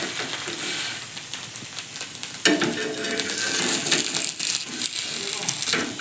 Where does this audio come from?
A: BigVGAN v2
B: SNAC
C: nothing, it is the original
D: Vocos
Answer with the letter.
C